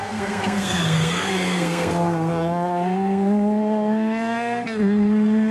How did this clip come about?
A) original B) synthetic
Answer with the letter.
B